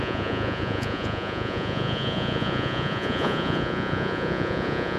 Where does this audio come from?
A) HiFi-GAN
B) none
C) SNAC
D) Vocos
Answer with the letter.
D